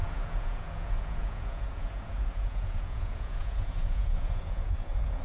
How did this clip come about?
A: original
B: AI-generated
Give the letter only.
B